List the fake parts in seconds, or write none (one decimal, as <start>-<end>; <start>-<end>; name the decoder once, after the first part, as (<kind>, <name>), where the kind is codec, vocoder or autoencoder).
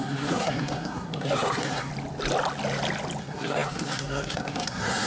0.0-1.9 (codec, SNAC); 3.2-5.1